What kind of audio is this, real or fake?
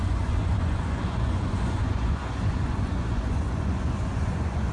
fake